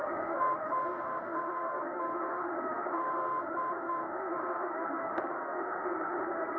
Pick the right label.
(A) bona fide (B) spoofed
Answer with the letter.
B